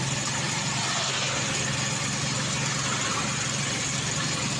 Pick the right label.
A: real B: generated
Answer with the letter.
A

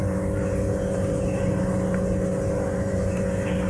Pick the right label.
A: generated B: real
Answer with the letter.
B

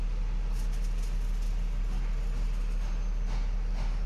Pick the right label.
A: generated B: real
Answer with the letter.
B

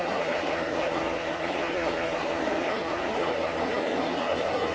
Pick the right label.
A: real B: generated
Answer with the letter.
B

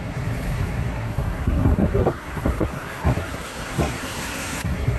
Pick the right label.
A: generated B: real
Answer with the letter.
A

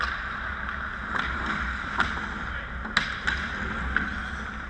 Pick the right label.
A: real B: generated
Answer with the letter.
A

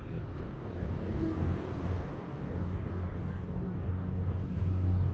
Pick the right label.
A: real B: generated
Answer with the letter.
B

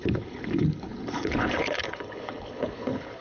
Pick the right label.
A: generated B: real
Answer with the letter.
A